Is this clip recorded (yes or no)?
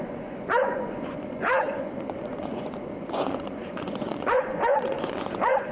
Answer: no